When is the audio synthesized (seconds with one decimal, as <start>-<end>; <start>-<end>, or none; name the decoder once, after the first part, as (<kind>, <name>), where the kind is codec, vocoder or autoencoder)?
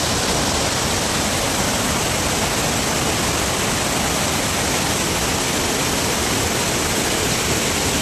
none